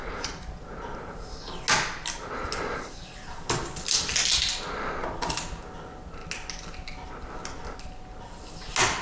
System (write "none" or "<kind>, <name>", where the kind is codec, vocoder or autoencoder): none